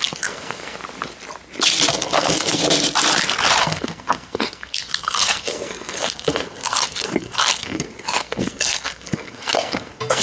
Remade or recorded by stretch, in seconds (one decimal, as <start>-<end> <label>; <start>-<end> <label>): 0.0-0.8 remade; 0.8-1.9 recorded; 1.9-2.6 remade; 2.6-3.6 recorded; 3.6-10.2 remade